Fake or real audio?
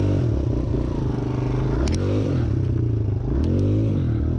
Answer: real